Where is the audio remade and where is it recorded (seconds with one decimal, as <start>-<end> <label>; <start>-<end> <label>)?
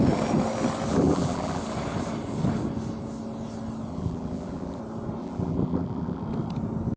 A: 0.0-0.9 recorded; 0.9-1.6 remade; 1.6-3.9 recorded; 3.9-4.8 remade; 4.8-5.2 recorded; 5.2-6.2 remade; 6.2-7.0 recorded